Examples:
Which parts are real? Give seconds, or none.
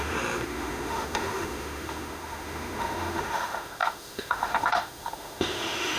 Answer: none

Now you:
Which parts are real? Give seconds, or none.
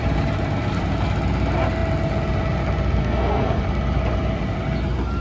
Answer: 0.0-3.0; 3.6-5.2